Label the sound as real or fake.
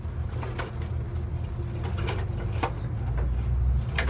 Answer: real